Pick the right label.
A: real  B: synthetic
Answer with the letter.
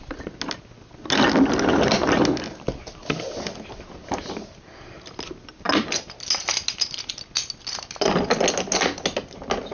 A